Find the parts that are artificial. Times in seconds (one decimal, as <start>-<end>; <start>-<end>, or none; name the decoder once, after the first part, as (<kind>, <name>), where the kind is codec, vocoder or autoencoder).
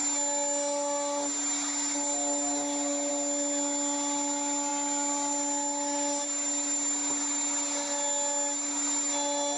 none